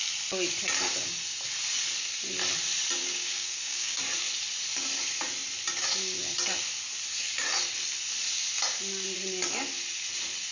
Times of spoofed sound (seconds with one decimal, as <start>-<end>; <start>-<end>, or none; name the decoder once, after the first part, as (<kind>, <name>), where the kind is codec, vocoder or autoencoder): 3.0-4.0 (codec, DAC)